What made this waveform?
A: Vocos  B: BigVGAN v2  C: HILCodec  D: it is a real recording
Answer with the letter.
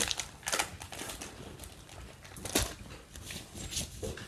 D